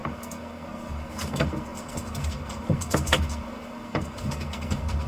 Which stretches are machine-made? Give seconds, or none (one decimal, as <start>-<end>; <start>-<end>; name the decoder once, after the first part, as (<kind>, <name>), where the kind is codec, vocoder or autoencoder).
0.0-5.1 (codec, SNAC)